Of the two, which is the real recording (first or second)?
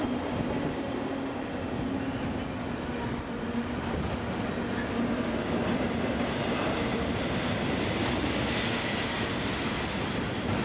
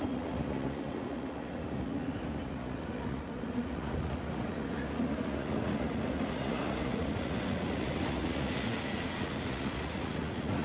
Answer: first